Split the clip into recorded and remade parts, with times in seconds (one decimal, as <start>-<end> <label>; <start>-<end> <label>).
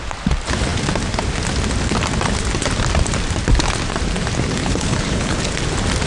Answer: 0.0-4.6 recorded; 4.6-5.4 remade; 5.4-6.1 recorded